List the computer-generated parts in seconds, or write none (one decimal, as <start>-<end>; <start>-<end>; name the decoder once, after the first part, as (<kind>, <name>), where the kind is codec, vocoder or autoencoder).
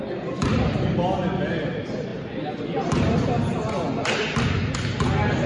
none